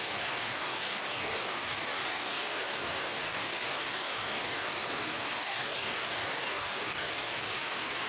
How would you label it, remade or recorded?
remade